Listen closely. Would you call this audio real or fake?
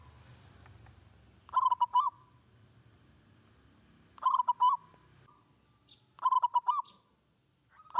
real